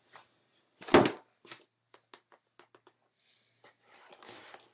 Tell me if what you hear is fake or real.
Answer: real